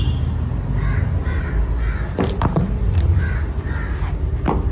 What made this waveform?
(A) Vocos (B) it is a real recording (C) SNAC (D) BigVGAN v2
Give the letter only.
B